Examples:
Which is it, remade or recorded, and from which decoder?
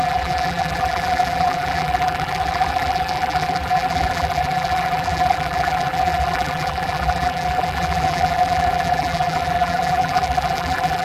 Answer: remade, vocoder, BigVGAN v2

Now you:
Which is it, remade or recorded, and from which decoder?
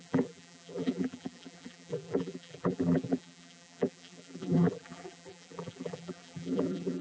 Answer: remade, vocoder, BigVGAN v2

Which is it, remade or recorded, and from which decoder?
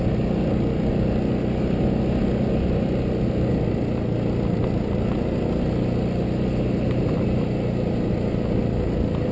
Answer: recorded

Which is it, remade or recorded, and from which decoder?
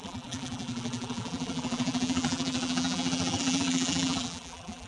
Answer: remade, vocoder, BigVGAN v2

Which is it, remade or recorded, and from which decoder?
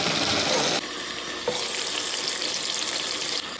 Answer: recorded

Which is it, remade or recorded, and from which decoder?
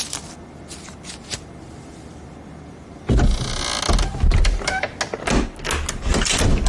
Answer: recorded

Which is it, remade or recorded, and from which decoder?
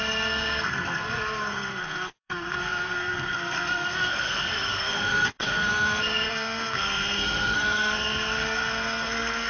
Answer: remade, codec, SNAC